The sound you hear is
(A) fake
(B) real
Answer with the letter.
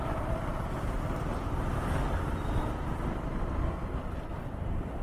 B